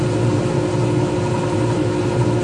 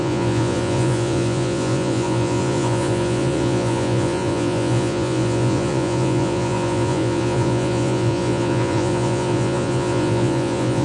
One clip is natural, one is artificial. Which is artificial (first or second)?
second